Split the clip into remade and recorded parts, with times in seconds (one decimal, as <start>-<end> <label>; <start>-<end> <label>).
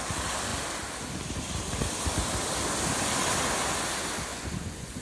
0.0-4.3 recorded; 4.3-5.0 remade